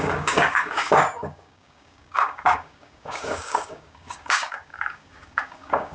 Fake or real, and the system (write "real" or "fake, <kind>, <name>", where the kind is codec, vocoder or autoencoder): fake, codec, DAC